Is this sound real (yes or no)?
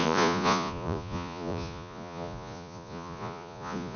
no